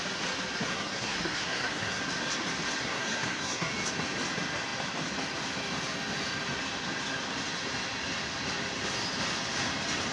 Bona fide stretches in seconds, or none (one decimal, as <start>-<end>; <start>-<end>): 0.0-0.7; 2.0-2.8; 3.7-10.1